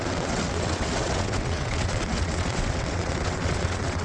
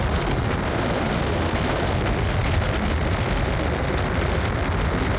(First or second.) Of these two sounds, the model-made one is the first